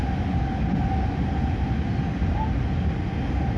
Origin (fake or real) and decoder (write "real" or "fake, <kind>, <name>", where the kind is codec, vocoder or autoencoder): real